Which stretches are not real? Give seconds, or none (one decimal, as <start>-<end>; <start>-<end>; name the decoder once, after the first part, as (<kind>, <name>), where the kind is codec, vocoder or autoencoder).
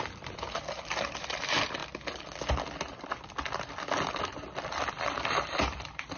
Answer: 0.0-1.8 (vocoder, BigVGAN v2); 5.3-6.2